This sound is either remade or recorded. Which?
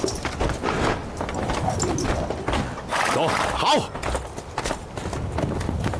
recorded